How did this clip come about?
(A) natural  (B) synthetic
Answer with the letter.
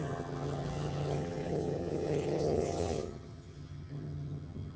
B